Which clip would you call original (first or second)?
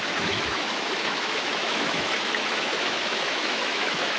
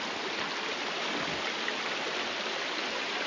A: second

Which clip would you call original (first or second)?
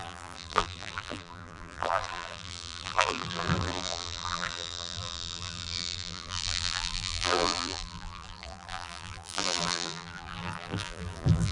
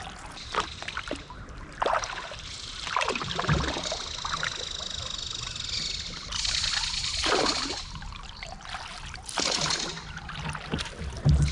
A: second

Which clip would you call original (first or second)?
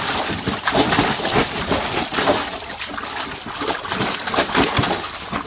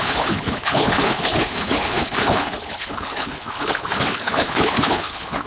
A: first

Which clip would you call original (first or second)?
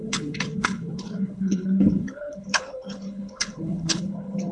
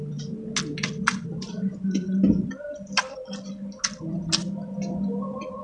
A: second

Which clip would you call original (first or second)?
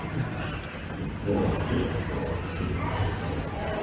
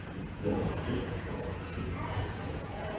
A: first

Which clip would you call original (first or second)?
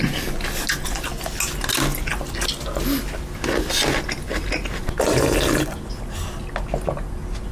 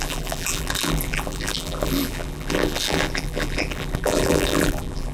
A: first